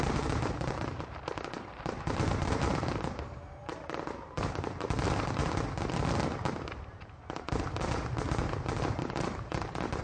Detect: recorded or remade remade